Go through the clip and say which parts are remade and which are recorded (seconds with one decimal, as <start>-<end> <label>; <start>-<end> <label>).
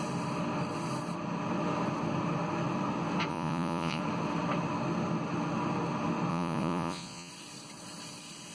0.0-3.3 recorded; 3.3-4.0 remade; 4.0-6.3 recorded; 6.3-7.3 remade; 7.3-8.5 recorded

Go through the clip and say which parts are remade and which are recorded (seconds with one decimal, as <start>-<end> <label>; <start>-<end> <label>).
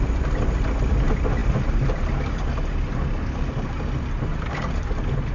0.0-5.3 recorded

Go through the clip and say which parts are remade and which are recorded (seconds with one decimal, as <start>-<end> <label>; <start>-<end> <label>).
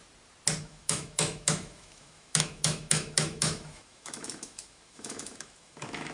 0.0-0.6 recorded; 0.6-6.1 remade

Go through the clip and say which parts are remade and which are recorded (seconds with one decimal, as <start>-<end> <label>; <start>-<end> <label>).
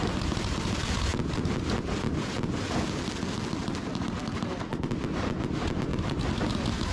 0.0-5.9 recorded; 5.9-6.4 remade; 6.4-6.9 recorded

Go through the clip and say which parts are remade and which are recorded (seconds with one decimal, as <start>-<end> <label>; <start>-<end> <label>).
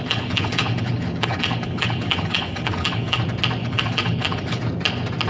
0.0-3.2 remade; 3.2-3.6 recorded; 3.6-4.6 remade; 4.6-5.3 recorded